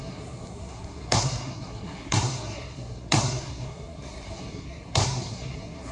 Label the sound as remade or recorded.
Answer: remade